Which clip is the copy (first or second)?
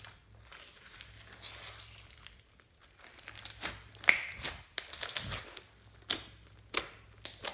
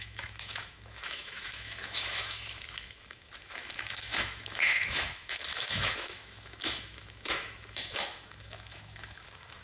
second